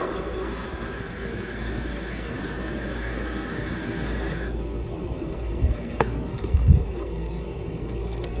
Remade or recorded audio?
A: remade